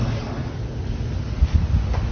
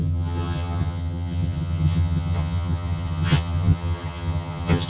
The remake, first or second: second